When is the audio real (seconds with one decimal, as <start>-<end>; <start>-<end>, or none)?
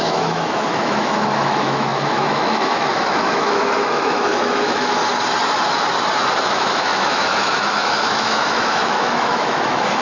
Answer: 5.0-6.4